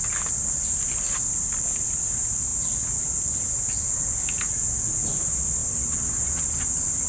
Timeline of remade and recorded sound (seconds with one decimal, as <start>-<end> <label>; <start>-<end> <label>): 0.0-7.1 recorded